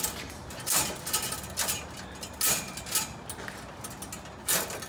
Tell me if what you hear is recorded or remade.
recorded